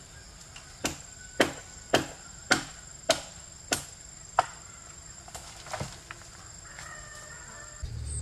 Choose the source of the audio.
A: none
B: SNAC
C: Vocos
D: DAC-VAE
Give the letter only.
A